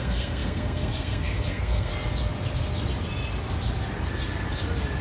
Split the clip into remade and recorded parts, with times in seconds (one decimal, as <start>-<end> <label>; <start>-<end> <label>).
0.0-1.9 remade; 1.9-5.0 recorded